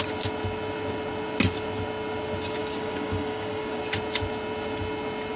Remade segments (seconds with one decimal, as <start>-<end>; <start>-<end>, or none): 2.6-3.8